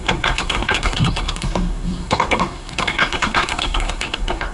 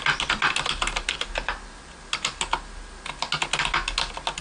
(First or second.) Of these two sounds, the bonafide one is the second